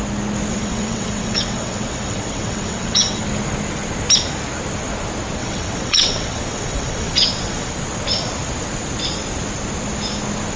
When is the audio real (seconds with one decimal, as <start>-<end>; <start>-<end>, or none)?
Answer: 0.0-0.5; 3.2-5.4; 7.7-10.6